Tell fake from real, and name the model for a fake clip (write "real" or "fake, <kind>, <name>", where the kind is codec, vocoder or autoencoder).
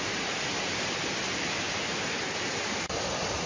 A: real